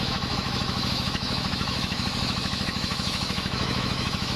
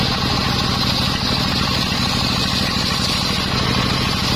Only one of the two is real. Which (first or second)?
second